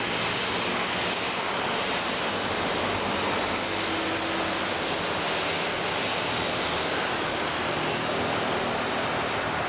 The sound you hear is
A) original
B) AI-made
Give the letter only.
A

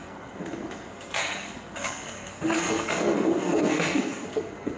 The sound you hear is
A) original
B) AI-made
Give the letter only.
B